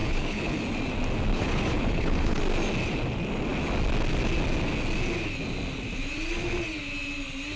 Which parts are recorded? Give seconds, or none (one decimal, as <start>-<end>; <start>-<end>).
0.6-1.3; 2.4-7.6